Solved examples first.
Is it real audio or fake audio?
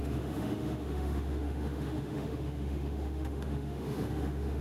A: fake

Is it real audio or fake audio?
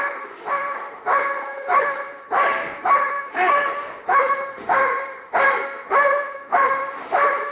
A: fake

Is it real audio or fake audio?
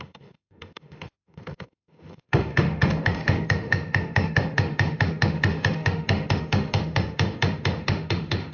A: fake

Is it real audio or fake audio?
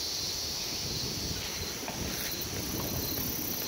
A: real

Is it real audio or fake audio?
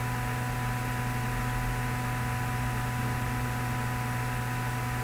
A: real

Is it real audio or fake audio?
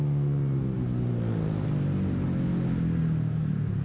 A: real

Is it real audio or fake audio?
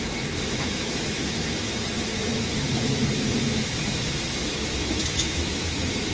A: fake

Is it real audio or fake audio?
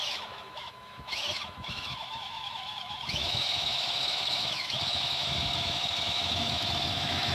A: fake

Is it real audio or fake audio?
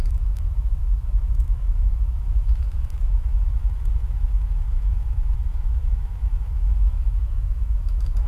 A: fake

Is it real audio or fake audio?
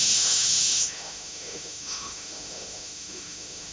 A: fake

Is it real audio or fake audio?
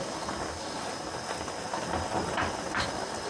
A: real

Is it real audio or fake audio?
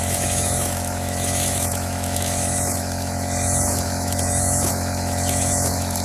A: fake